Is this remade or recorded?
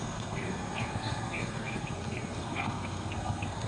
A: remade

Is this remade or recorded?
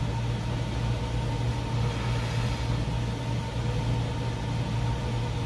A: recorded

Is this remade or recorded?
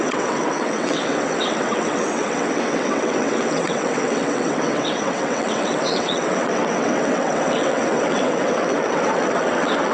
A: remade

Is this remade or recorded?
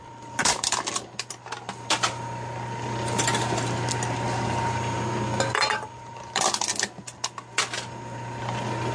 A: recorded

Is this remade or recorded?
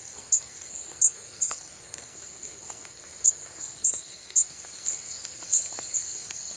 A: remade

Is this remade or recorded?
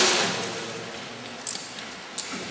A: recorded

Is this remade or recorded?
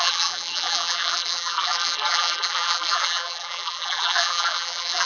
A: remade